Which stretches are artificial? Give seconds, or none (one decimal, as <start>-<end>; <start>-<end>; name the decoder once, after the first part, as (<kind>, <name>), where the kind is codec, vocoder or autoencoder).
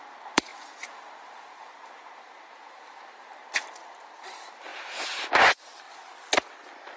0.0-3.4 (vocoder, BigVGAN v2); 4.2-4.7